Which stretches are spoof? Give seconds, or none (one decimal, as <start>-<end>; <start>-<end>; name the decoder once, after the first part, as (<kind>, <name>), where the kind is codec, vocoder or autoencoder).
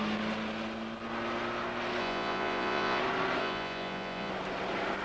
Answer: 2.0-3.0 (vocoder, Vocos); 3.4-4.3